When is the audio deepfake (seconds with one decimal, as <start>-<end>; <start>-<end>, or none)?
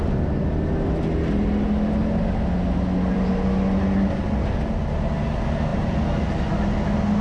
none